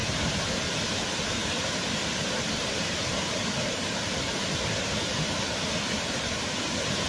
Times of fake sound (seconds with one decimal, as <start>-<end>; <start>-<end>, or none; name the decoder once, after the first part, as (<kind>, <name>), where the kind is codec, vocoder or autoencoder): 0.0-0.6 (vocoder, BigVGAN v2); 1.4-5.4